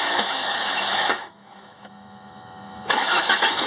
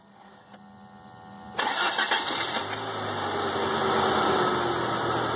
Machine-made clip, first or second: first